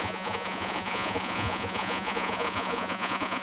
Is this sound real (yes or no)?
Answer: no